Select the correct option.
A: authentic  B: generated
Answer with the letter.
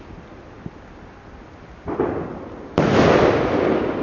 A